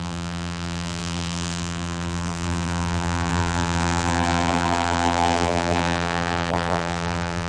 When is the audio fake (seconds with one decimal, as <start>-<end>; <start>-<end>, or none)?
0.0-7.5

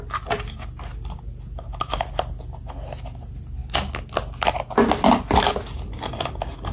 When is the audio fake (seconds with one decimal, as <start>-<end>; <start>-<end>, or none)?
none

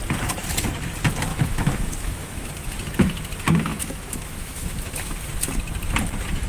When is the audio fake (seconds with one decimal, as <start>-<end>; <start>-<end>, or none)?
1.3-2.5; 3.7-5.3

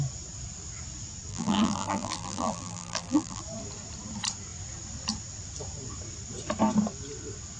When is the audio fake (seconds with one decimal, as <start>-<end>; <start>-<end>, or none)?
1.3-3.4